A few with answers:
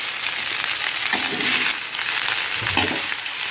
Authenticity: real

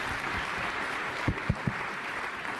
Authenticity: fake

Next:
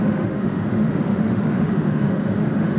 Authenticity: fake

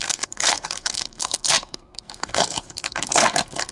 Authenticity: fake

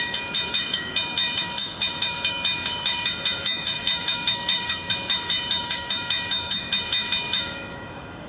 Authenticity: fake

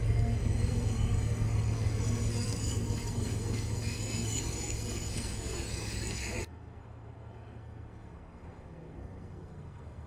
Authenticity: fake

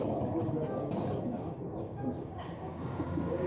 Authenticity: fake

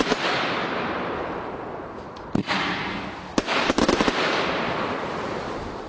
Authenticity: real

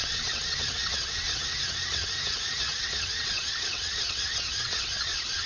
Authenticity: fake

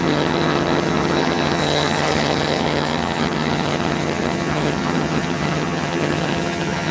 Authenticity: fake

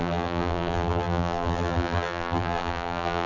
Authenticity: fake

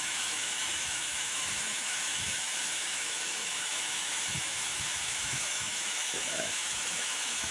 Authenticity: fake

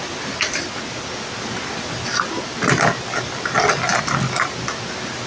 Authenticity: real